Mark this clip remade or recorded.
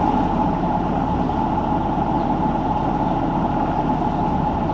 recorded